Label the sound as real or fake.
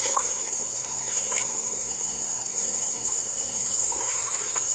fake